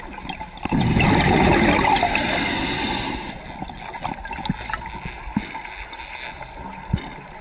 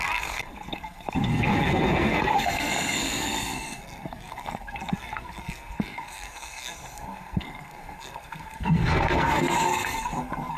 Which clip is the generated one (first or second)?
second